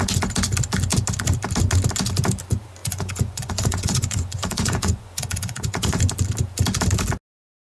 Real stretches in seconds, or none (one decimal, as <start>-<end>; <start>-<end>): 0.0-2.8; 6.0-7.7